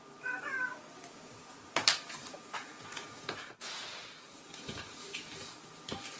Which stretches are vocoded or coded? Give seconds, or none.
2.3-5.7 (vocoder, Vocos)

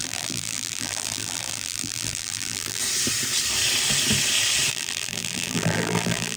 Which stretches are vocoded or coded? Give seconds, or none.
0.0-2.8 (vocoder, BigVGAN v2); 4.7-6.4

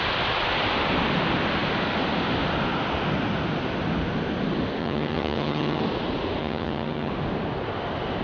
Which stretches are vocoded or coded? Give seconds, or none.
4.8-5.8 (vocoder, HiFi-GAN); 6.4-7.1

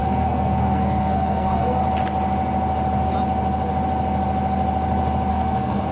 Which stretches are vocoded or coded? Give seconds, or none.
0.0-1.8 (codec, SNAC); 5.3-5.9

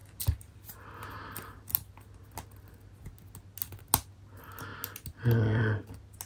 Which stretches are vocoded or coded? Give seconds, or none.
none

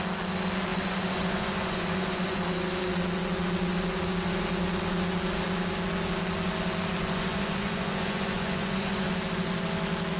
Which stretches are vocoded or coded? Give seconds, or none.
0.7-2.4 (vocoder, Vocos); 7.0-9.1